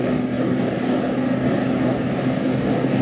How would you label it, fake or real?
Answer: fake